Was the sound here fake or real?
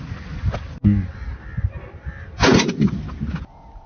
real